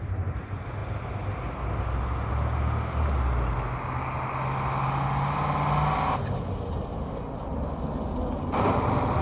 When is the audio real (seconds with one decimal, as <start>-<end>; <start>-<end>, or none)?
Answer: 0.0-9.2